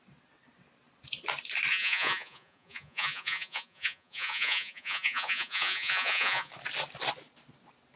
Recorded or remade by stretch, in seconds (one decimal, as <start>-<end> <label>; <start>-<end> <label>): 0.0-1.7 recorded; 1.7-6.5 remade; 6.5-8.0 recorded